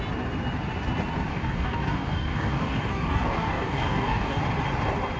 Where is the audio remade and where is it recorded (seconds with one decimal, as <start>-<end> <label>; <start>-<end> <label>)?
0.0-1.3 recorded; 1.3-4.4 remade; 4.4-5.2 recorded